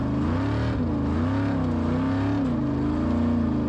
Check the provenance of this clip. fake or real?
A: real